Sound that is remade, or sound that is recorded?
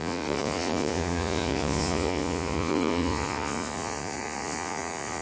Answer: remade